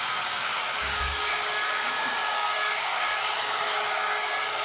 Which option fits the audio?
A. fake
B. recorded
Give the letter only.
A